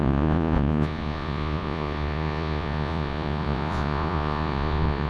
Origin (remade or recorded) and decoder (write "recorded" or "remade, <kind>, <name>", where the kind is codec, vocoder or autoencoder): remade, vocoder, Vocos